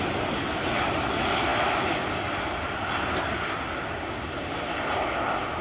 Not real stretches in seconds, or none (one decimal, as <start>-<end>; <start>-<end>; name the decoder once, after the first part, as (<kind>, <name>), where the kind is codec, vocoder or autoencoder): none